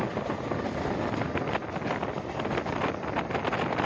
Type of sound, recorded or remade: recorded